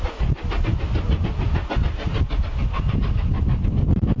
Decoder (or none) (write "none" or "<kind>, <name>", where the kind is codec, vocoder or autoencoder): none